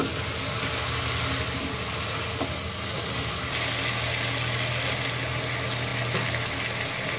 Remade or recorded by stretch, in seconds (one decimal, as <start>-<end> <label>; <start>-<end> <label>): 0.0-7.2 recorded